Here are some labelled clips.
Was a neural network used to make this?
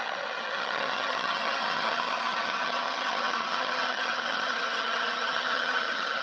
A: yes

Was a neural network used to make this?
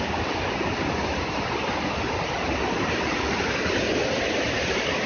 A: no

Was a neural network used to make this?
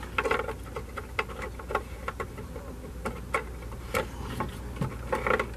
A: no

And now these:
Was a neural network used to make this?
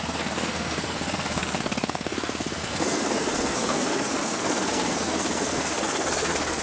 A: yes